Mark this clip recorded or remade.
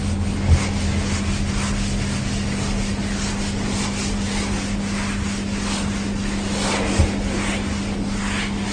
recorded